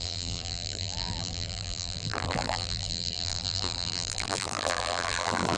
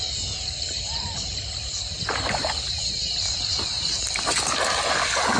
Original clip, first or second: second